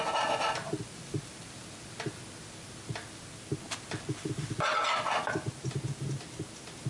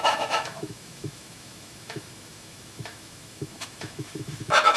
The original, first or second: first